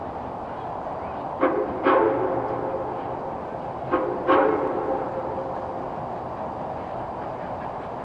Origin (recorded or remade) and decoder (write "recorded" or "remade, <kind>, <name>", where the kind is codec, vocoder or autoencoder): recorded